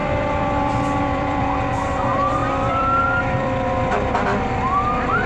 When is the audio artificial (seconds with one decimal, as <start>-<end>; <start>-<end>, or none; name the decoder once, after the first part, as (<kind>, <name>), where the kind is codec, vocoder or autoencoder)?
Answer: 0.0-5.3 (vocoder, BigVGAN v2)

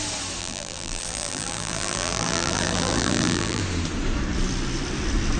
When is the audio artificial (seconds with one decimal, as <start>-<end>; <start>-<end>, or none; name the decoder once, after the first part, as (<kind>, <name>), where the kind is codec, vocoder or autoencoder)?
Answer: 0.4-3.6 (vocoder, BigVGAN v2)

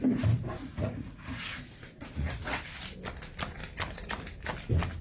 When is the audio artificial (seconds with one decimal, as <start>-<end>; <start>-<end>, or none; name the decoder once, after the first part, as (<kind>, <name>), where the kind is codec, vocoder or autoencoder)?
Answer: 0.6-2.6 (vocoder, Vocos)

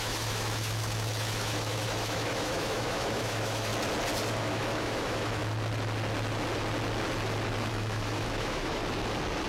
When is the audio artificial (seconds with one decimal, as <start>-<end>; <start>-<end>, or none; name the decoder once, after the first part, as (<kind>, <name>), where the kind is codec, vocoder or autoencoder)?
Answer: 0.0-3.7 (autoencoder, DAC-VAE); 4.3-5.4; 7.7-8.8

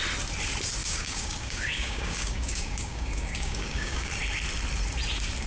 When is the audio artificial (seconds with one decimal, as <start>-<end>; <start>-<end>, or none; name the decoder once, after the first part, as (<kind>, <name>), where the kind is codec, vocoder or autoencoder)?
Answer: 0.8-4.1 (codec, DAC)

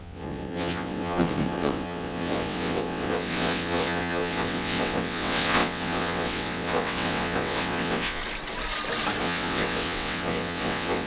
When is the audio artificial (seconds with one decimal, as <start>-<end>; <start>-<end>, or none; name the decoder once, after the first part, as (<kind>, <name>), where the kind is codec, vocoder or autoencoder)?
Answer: 0.0-8.2 (vocoder, WaveNeXt); 9.2-11.1

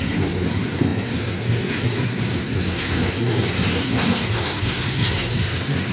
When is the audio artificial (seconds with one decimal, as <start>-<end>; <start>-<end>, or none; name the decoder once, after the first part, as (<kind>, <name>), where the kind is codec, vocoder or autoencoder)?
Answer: 0.0-5.9 (codec, SNAC)

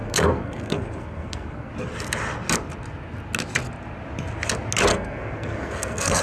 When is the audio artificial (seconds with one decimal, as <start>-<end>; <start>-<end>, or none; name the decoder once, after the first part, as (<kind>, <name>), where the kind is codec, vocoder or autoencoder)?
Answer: 0.0-1.7 (codec, SNAC); 4.9-6.2